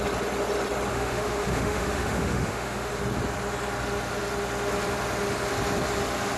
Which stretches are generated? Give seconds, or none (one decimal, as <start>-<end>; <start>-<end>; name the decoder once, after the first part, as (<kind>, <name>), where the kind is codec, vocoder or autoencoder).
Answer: 0.9-2.9 (autoencoder, DAC-VAE)